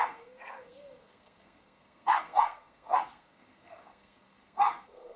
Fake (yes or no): yes